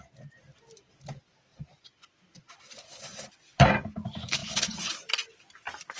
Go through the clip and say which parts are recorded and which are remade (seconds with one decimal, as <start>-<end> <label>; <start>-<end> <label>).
0.0-1.5 recorded; 1.5-2.0 remade; 2.0-3.1 recorded; 3.1-3.7 remade; 3.7-4.4 recorded; 4.4-4.9 remade; 4.9-6.0 recorded